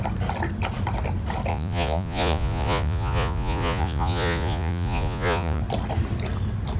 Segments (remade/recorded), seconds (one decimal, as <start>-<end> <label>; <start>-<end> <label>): 0.0-1.5 recorded; 1.5-5.6 remade; 5.6-6.8 recorded